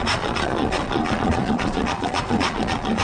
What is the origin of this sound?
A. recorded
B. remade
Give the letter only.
B